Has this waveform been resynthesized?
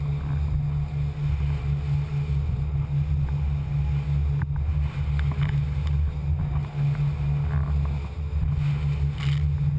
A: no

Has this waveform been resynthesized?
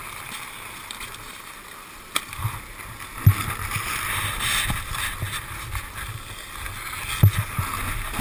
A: no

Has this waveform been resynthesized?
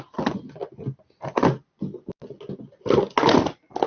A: no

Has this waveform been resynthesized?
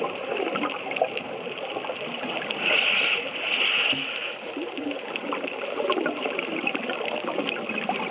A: no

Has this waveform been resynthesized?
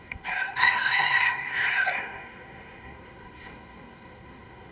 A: yes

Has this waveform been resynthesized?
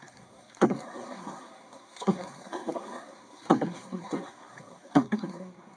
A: yes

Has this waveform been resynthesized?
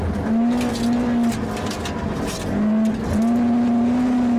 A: no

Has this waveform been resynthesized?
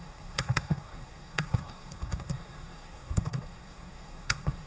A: yes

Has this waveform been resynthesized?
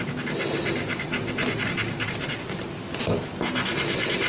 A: no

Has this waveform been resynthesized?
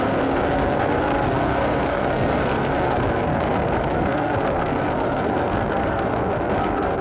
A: yes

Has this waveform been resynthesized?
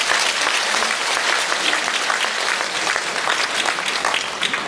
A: no